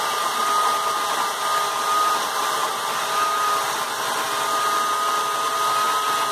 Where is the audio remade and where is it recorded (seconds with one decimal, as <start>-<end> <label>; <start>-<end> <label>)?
0.0-0.4 remade; 0.4-2.4 recorded; 2.4-2.8 remade; 2.8-6.3 recorded